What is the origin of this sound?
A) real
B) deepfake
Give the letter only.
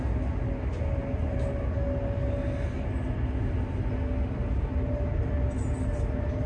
A